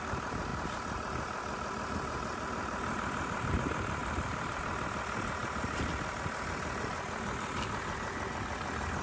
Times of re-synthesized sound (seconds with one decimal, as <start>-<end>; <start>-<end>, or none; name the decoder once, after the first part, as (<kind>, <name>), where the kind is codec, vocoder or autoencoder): 4.0-4.6 (vocoder, BigVGAN v2)